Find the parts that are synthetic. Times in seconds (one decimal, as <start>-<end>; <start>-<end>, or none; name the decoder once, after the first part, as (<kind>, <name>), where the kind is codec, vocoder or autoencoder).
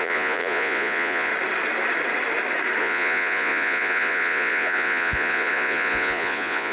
0.0-1.3 (vocoder, Vocos); 2.8-6.7